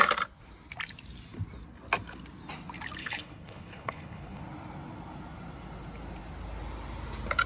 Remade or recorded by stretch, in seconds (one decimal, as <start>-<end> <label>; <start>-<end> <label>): 0.0-3.0 recorded; 3.0-4.4 remade; 4.4-7.5 recorded